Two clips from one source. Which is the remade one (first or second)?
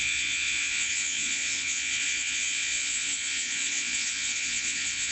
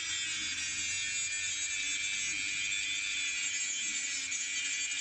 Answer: first